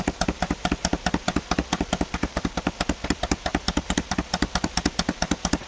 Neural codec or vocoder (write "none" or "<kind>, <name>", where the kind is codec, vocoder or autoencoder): vocoder, BigVGAN v2